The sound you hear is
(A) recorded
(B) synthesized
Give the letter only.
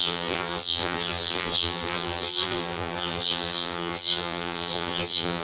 B